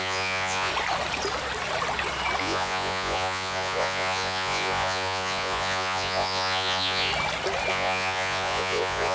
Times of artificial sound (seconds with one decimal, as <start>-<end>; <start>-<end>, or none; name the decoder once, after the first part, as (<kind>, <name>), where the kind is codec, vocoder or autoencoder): 0.0-0.7 (vocoder, Vocos); 2.4-7.1; 7.7-9.1